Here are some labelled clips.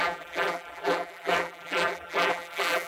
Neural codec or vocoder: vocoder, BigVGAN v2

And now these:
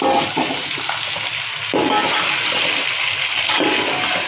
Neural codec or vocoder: none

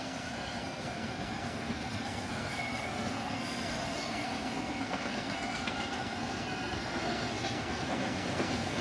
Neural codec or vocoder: codec, SNAC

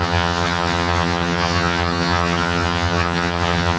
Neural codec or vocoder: vocoder, HiFi-GAN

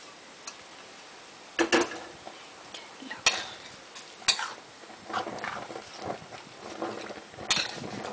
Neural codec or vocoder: none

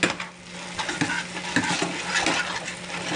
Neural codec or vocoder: none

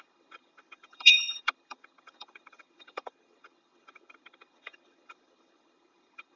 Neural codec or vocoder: vocoder, HiFi-GAN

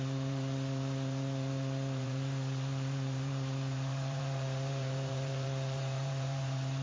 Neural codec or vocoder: vocoder, BigVGAN v2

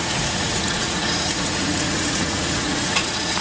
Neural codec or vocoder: vocoder, Vocos